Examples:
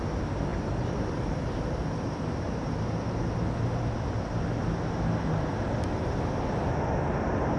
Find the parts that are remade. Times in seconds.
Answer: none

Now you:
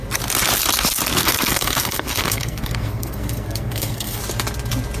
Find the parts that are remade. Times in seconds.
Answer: 1.2-4.2

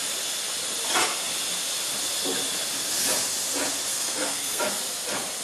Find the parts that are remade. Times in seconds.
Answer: 3.9-4.6

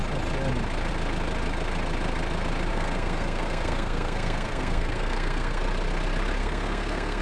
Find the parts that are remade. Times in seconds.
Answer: 2.7-5.6; 6.4-7.2

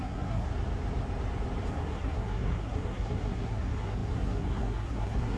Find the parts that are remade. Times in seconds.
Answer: 0.0-0.5; 1.7-5.4

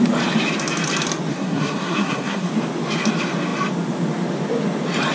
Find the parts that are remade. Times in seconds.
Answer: 1.3-2.5

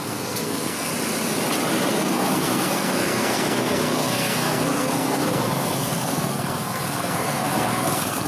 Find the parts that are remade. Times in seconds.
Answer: 0.0-0.9; 1.9-8.3